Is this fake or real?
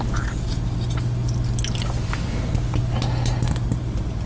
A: real